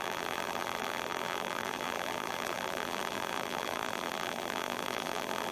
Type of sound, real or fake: fake